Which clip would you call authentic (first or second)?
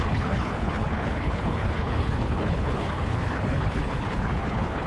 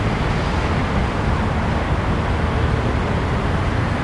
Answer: second